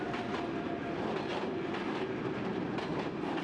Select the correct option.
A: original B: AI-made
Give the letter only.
A